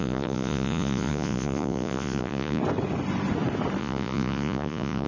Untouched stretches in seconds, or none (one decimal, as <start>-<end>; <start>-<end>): 2.6-3.8